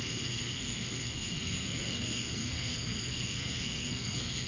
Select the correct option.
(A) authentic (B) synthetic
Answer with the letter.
B